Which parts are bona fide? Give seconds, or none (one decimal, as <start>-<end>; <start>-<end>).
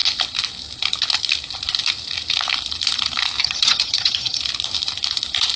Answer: 0.0-3.4; 4.4-5.6